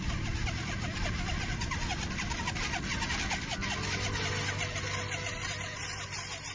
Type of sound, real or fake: real